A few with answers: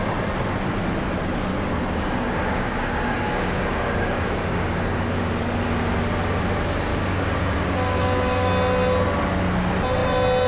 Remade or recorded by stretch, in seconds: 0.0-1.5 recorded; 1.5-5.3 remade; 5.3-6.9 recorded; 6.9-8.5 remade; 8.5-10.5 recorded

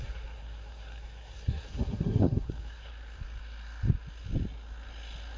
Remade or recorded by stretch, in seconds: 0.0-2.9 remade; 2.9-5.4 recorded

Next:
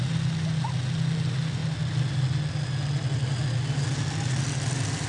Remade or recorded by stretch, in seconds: 0.0-5.1 recorded

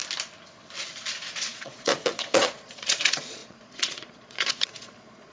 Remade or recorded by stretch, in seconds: 0.0-1.3 recorded; 1.3-5.3 remade

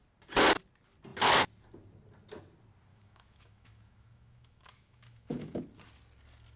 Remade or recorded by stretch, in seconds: 0.0-2.9 recorded; 2.9-5.6 remade; 5.6-6.6 recorded

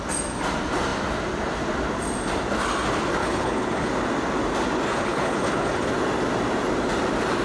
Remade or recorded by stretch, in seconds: 0.0-3.2 recorded; 3.2-3.9 remade; 3.9-4.9 recorded; 4.9-5.9 remade; 5.9-7.4 recorded

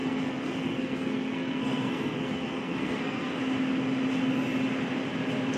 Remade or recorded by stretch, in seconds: 0.0-3.4 remade; 3.4-5.6 recorded